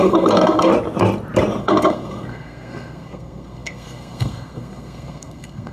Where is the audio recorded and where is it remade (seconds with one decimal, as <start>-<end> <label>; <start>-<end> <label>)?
0.0-0.7 remade; 0.7-1.6 recorded; 1.6-5.7 remade